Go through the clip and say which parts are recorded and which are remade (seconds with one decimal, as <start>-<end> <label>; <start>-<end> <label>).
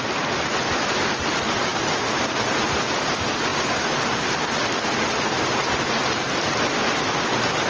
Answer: 0.0-7.7 recorded